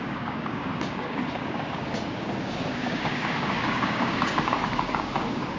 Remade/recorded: remade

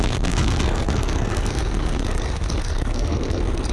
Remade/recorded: remade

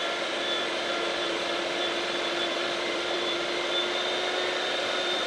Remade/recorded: remade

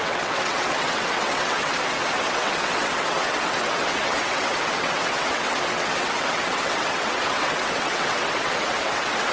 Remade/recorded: remade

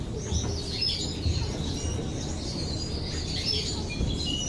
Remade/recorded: recorded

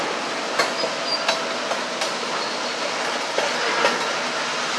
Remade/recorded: recorded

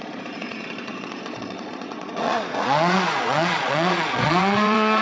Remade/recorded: remade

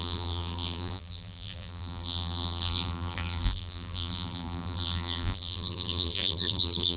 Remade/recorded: remade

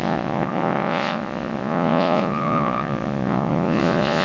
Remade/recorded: remade